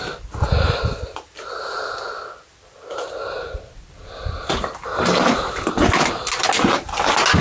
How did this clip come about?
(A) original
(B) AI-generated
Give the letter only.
A